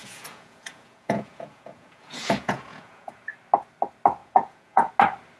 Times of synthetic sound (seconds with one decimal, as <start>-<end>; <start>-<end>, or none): 0.0-3.2; 4.2-4.9